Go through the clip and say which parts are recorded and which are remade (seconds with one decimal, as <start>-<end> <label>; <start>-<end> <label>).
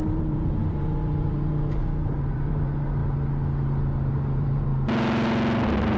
0.0-3.0 remade; 3.0-4.1 recorded; 4.1-4.7 remade; 4.7-6.0 recorded